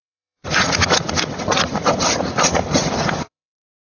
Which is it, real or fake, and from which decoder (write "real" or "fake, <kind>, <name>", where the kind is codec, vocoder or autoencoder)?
fake, vocoder, Vocos